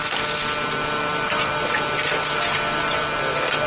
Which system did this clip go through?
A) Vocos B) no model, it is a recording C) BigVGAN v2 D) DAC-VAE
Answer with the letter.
B